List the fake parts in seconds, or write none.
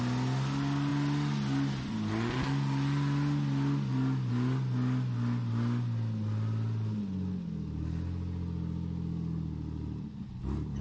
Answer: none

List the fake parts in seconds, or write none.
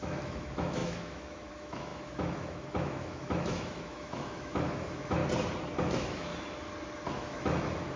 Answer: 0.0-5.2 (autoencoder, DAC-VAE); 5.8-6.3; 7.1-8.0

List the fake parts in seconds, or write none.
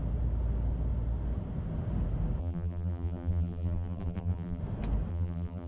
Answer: 2.4-4.6 (vocoder, BigVGAN v2); 5.1-5.7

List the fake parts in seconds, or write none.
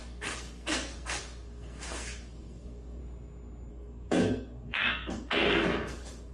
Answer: 0.0-3.0 (codec, SNAC); 3.7-6.3